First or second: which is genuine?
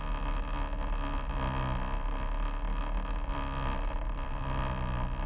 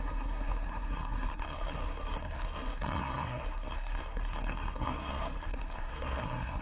first